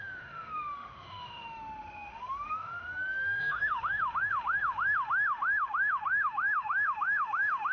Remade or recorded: remade